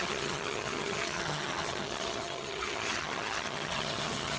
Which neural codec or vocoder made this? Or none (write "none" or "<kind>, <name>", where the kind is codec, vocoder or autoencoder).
vocoder, HiFi-GAN